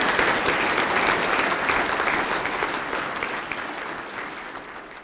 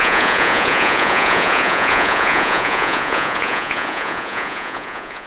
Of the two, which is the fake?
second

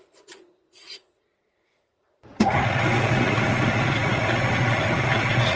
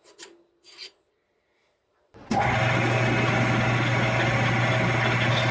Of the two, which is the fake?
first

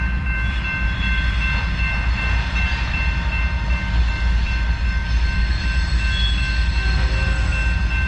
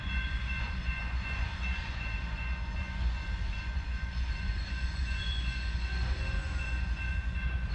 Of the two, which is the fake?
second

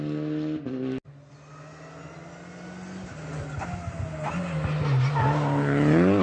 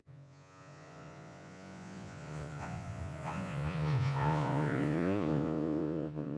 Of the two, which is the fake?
second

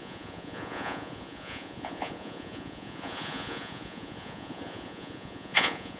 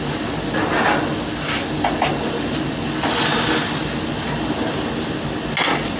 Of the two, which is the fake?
first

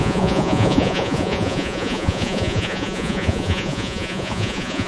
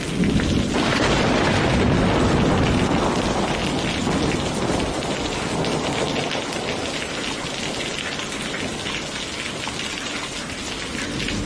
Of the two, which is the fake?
first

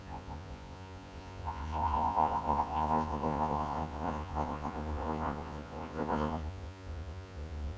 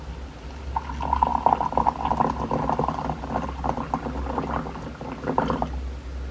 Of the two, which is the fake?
first